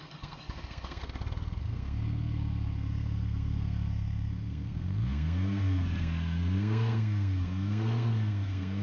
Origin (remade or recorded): remade